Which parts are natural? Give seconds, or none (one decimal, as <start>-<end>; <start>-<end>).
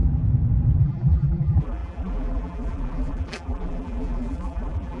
0.0-0.8